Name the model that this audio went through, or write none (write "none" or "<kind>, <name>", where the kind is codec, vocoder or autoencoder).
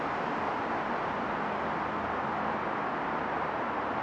none